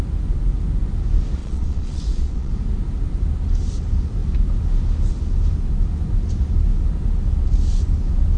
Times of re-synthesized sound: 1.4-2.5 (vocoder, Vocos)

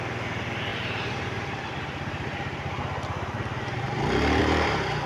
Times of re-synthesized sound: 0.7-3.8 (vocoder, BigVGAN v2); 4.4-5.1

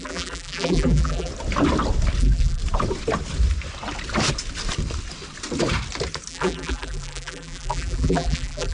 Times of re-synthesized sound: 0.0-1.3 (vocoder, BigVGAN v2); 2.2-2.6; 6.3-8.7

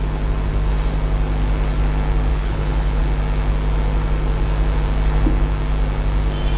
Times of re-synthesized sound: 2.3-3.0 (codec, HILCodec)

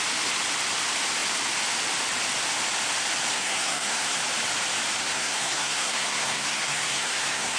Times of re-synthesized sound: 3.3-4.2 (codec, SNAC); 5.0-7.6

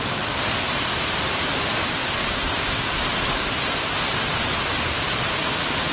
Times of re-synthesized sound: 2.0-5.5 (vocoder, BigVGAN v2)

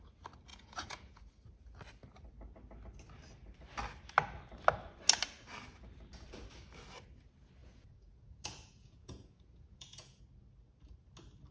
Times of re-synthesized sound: 0.5-1.3 (vocoder, Vocos); 7.6-10.2